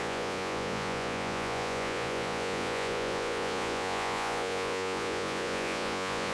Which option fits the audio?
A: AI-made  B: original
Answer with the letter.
A